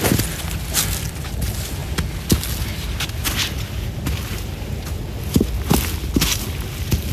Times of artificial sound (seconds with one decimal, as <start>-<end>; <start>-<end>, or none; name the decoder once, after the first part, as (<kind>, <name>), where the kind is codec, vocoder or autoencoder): none